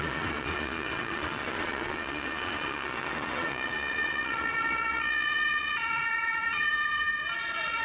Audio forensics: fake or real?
fake